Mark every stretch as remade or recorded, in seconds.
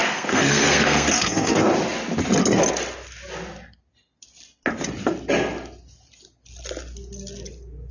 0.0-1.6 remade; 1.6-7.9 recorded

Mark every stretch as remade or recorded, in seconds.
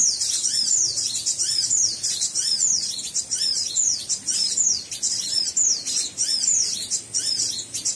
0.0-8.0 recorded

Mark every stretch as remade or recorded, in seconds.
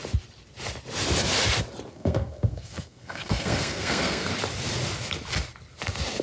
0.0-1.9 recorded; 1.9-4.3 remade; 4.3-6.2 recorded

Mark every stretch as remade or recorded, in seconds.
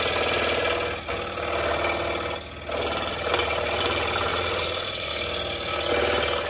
0.0-4.3 recorded; 4.3-5.1 remade; 5.1-6.5 recorded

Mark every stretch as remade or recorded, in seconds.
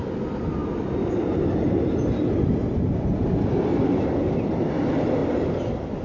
0.0-6.0 recorded